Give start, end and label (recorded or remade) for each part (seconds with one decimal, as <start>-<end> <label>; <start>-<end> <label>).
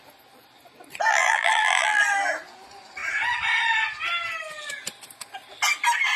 0.0-1.1 recorded; 1.1-2.0 remade; 2.0-6.2 recorded